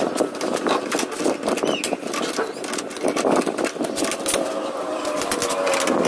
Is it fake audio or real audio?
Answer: real